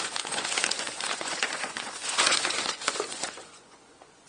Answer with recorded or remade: remade